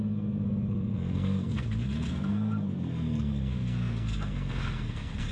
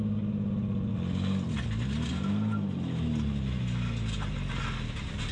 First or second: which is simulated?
first